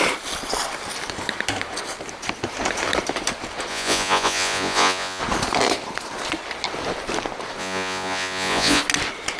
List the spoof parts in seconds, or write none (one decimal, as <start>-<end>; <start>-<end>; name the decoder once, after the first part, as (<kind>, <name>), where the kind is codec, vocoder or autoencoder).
3.7-5.2 (vocoder, Vocos); 7.6-8.8